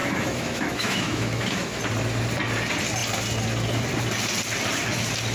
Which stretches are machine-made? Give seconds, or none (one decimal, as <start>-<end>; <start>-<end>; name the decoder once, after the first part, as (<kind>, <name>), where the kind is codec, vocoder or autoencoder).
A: 0.0-1.8 (autoencoder, DAC-VAE)